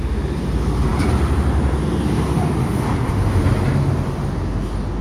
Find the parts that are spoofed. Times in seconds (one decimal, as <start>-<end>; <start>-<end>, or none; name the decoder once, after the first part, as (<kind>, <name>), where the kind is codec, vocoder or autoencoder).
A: 0.9-3.9 (vocoder, BigVGAN v2)